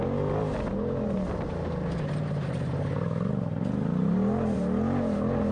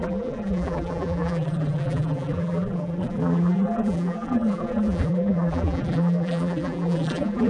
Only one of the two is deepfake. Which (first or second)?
second